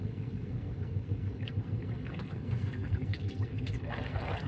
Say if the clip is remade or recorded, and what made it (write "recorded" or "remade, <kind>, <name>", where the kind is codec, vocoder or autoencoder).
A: remade, codec, SNAC